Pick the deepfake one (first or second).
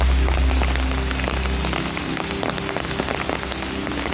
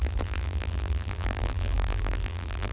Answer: second